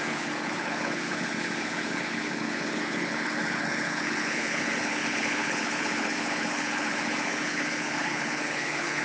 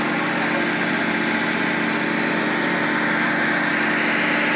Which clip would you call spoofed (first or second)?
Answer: first